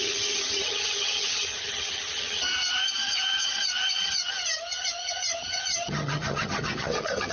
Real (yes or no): no